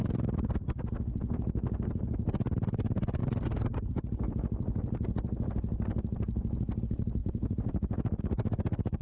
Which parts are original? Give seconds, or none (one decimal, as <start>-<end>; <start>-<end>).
0.0-9.0